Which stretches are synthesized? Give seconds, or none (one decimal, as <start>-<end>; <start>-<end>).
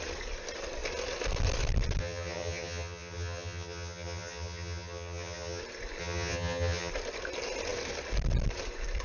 2.0-5.6; 6.0-6.9